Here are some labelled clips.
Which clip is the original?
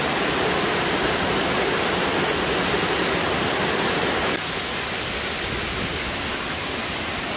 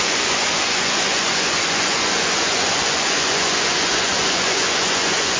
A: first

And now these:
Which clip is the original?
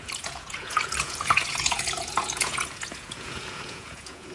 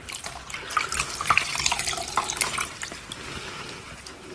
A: second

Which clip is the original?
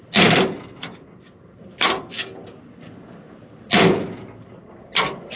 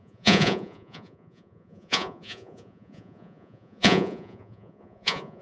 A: first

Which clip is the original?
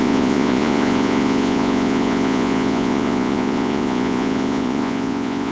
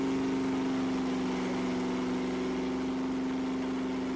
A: second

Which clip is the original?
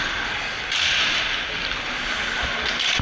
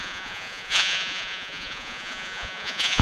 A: first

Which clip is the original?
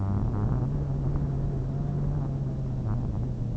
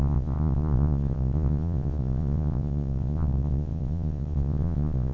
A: first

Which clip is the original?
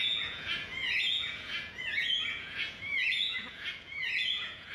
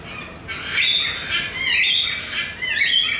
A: second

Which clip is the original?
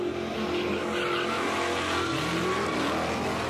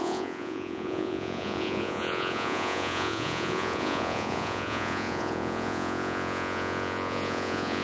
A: first